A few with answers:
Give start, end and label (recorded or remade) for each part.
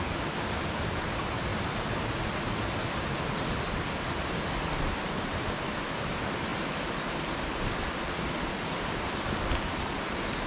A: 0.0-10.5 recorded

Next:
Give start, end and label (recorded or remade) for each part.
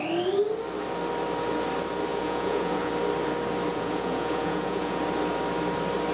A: 0.0-2.1 recorded; 2.1-2.9 remade; 2.9-3.7 recorded; 3.7-5.0 remade; 5.0-6.1 recorded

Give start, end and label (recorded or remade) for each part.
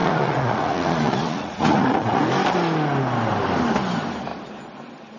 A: 0.0-2.2 remade; 2.2-5.2 recorded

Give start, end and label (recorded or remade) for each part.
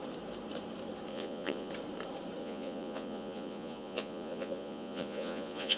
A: 0.0-1.1 recorded; 1.1-1.7 remade; 1.7-2.4 recorded; 2.4-5.8 remade